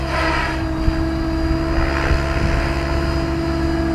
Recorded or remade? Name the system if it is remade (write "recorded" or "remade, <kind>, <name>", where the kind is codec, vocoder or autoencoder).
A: recorded